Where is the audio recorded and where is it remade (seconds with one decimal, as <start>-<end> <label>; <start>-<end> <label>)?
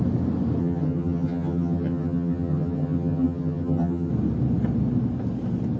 0.0-0.6 recorded; 0.6-4.1 remade; 4.1-5.8 recorded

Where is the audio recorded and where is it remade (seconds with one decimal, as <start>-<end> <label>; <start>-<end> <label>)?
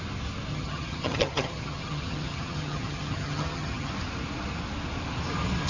0.0-0.5 recorded; 0.5-3.9 remade; 3.9-5.7 recorded